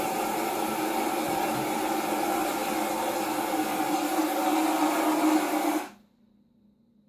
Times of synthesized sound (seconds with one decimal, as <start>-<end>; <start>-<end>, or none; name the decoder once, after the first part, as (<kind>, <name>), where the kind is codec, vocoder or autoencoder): none